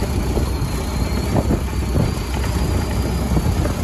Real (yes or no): yes